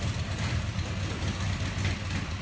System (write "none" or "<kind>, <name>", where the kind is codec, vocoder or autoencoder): none